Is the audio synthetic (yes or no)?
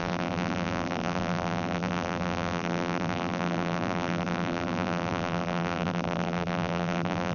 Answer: yes